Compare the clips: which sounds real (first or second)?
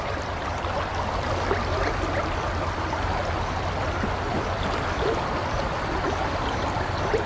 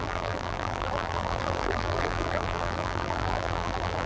first